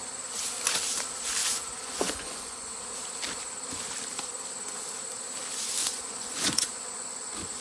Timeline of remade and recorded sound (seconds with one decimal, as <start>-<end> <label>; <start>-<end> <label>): 0.0-1.4 recorded; 1.4-2.8 remade; 2.8-5.8 recorded; 5.8-7.6 remade